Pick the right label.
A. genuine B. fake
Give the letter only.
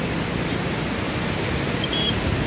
A